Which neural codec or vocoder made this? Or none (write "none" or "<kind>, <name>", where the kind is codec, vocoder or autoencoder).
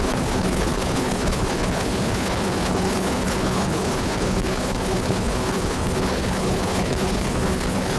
codec, HILCodec